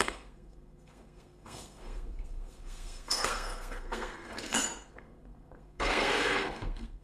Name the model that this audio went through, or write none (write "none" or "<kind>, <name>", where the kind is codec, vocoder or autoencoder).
codec, SNAC